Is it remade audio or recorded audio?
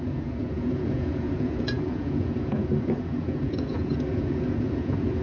remade